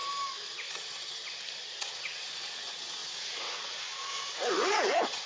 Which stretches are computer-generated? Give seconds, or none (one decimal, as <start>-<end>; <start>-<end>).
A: 0.7-1.2; 1.8-5.3